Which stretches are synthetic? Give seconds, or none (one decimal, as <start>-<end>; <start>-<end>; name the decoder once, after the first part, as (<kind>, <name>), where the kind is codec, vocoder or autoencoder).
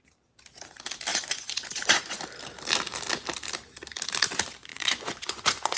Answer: 1.1-2.2 (vocoder, Vocos); 4.7-5.8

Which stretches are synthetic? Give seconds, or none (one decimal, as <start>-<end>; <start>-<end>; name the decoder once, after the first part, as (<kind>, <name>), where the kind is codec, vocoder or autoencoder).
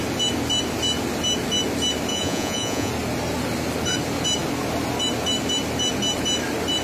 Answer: 2.1-2.9 (vocoder, Vocos)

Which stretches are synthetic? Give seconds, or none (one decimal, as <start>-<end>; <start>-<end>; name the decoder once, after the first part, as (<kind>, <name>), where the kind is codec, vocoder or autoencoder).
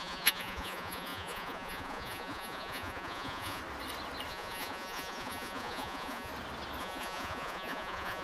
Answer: 0.0-3.6 (vocoder, Vocos); 4.3-6.3; 6.8-8.2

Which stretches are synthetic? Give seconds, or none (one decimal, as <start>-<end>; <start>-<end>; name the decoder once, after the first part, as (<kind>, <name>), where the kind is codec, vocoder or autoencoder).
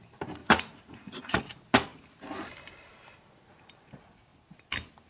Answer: 0.4-1.4 (vocoder, Vocos)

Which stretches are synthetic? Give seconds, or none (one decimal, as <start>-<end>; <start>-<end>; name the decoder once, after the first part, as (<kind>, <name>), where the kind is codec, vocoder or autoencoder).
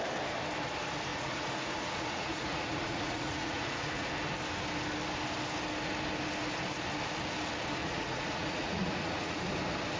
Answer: 1.1-4.1 (vocoder, Vocos); 7.8-9.4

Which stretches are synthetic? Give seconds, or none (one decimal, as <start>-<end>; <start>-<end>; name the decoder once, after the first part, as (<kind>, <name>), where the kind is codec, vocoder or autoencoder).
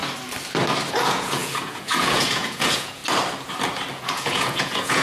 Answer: 0.9-3.0 (vocoder, Vocos); 4.0-5.0